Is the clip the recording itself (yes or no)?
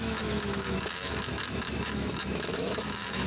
no